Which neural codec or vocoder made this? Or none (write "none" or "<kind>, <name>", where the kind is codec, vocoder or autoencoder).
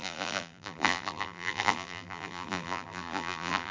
vocoder, BigVGAN v2